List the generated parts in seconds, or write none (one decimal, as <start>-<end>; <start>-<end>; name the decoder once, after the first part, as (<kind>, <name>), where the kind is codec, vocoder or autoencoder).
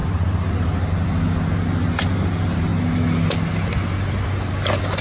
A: none